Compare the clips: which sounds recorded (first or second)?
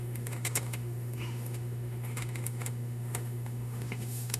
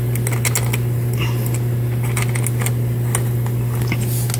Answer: second